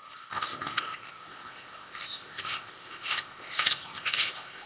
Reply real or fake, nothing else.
fake